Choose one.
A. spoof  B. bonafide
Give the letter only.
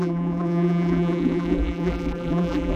A